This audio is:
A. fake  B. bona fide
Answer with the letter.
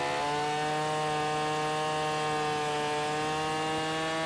B